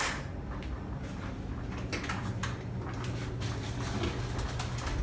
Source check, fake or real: real